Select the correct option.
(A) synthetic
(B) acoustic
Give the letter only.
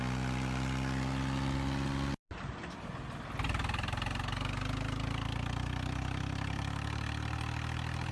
B